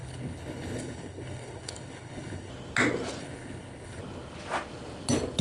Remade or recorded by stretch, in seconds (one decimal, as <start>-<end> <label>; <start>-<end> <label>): 0.0-2.5 remade; 2.5-3.2 recorded; 3.2-4.0 remade; 4.0-5.4 recorded